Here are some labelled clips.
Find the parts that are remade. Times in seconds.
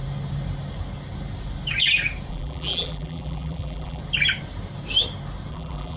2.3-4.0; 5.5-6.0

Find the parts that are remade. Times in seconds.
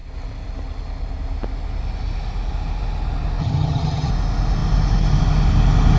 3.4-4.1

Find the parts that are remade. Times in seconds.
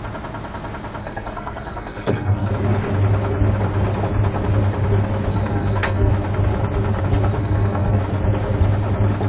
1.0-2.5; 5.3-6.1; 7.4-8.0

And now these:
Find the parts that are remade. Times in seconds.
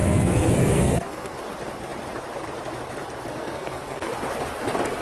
0.0-1.4; 3.3-4.1